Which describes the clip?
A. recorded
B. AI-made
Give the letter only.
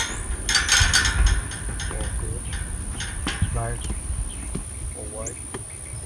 A